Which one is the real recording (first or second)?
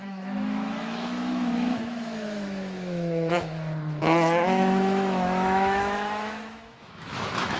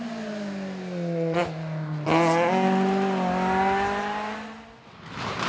second